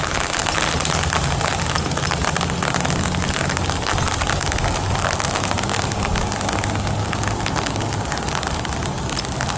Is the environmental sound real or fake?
real